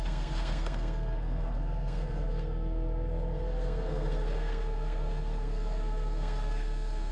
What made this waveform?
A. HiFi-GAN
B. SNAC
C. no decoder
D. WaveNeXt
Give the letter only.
B